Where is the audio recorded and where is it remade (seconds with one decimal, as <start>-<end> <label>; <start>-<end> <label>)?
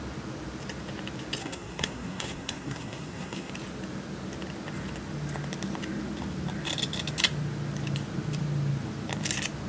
0.0-1.4 recorded; 1.4-3.5 remade; 3.5-9.7 recorded